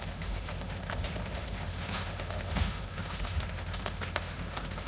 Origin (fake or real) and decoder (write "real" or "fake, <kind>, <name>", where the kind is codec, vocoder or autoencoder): fake, autoencoder, DAC-VAE